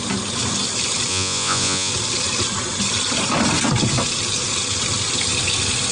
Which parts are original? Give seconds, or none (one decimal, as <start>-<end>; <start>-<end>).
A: 0.0-1.1; 1.9-5.9